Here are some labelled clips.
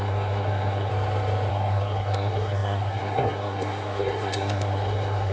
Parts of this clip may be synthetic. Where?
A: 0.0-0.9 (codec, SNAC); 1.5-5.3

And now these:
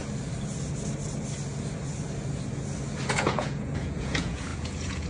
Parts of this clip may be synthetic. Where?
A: 3.1-5.1 (vocoder, Vocos)

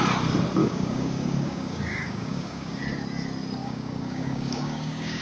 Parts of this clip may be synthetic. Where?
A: 0.6-2.8 (codec, DAC); 3.6-5.2

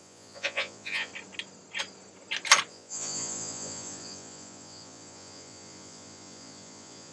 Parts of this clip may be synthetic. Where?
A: 0.0-1.1 (vocoder, Vocos); 2.7-7.1

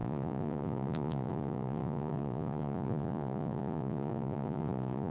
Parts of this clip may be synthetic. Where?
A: 0.0-5.1 (vocoder, Vocos)

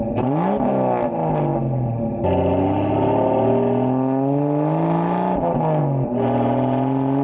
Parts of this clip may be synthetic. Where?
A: none

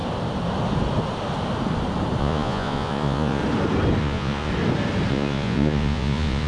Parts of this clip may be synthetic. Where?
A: 2.2-3.4 (vocoder, Vocos); 4.0-4.5; 5.1-6.5

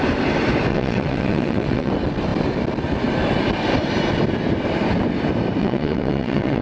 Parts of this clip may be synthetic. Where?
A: 0.7-1.9 (vocoder, WaveNeXt); 5.6-6.6